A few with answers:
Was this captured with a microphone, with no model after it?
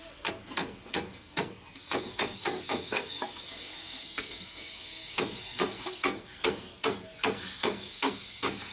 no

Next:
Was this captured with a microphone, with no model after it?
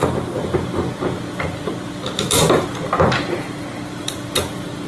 yes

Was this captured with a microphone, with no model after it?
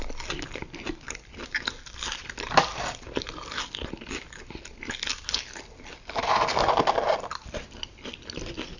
yes